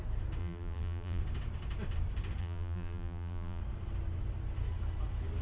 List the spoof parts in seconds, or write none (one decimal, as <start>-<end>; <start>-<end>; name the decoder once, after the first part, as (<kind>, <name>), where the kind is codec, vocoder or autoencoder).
0.4-1.2 (vocoder, BigVGAN v2); 2.4-3.6